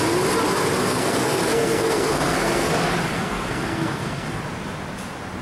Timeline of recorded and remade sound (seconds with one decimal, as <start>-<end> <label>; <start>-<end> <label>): 0.0-0.8 recorded; 0.8-2.7 remade; 2.7-3.1 recorded; 3.1-4.4 remade; 4.4-5.4 recorded